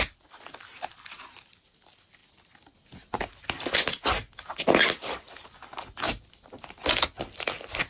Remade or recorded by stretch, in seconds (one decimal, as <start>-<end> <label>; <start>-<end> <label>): 0.0-7.9 recorded